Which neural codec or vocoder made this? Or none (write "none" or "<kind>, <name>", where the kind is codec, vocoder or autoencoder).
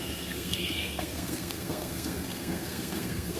codec, SNAC